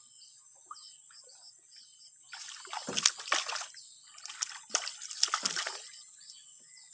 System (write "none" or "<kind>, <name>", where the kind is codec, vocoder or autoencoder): none